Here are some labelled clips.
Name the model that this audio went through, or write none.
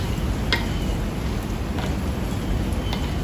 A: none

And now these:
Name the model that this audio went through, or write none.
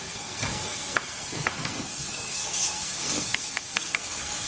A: codec, SNAC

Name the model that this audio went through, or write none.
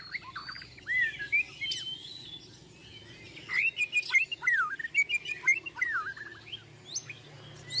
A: none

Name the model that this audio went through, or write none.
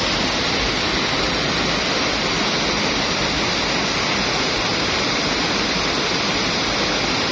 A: none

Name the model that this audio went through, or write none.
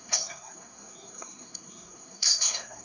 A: codec, SNAC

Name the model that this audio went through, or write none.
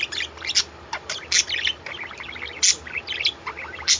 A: none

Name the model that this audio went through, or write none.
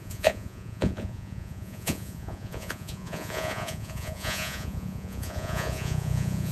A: vocoder, Vocos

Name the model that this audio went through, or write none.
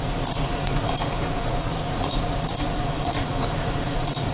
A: vocoder, Vocos